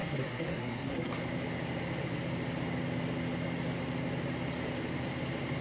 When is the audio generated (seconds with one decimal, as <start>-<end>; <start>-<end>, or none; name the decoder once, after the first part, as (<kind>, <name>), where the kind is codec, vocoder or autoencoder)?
0.0-1.1 (codec, SNAC)